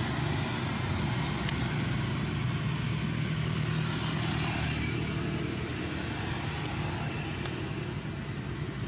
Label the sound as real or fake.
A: real